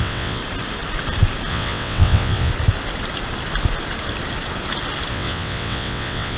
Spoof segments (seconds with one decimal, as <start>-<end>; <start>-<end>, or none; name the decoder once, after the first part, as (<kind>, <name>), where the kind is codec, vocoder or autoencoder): 0.0-0.4 (vocoder, WaveNeXt); 1.5-2.5; 5.1-6.4

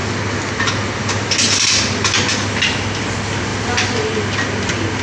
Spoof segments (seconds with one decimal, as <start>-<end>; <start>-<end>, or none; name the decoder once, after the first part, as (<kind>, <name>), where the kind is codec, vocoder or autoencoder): none

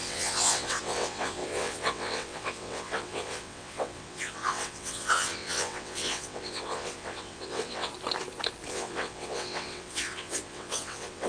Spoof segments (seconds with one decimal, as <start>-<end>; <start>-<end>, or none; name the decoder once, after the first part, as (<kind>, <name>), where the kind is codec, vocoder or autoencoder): 0.0-7.9 (vocoder, WaveNeXt); 8.7-11.3

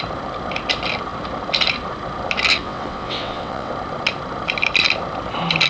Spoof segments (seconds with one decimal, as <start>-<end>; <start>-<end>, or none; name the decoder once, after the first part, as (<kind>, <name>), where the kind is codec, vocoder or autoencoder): 2.5-3.7 (vocoder, WaveNeXt)